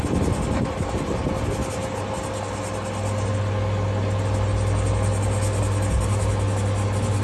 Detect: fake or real real